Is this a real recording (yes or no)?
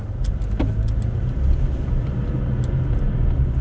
yes